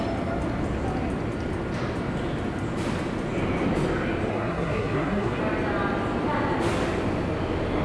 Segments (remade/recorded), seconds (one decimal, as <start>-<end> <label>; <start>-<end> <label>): 0.0-4.3 recorded; 4.3-5.4 remade; 5.4-7.8 recorded